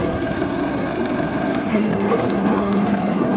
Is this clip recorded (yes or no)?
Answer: no